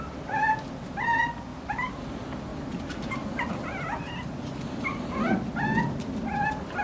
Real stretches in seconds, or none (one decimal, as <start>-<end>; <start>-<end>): 0.0-1.5; 2.0-2.5; 3.5-6.8